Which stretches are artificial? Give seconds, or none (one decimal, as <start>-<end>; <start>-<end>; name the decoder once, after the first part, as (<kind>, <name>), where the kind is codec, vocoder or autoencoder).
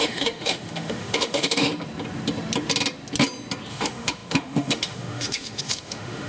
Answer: 0.0-1.7 (autoencoder, DAC-VAE); 3.7-6.3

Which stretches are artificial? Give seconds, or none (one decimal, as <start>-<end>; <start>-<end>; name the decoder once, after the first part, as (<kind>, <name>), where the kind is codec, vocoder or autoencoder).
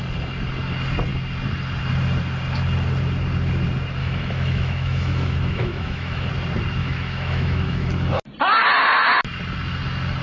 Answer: 4.0-6.3 (autoencoder, DAC-VAE); 6.8-7.9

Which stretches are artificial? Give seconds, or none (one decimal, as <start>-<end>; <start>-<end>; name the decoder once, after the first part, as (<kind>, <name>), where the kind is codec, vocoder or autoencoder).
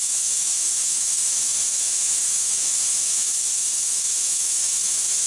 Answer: 0.0-5.3 (autoencoder, DAC-VAE)